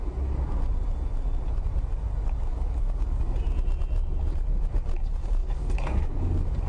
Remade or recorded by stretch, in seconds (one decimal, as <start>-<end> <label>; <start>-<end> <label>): 0.0-2.5 recorded; 2.5-3.4 remade; 3.4-5.4 recorded; 5.4-6.2 remade; 6.2-6.7 recorded